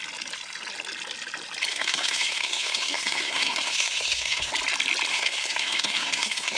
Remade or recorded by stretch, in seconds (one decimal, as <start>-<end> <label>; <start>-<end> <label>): 0.0-1.7 recorded; 1.7-4.5 remade; 4.5-5.1 recorded; 5.1-6.6 remade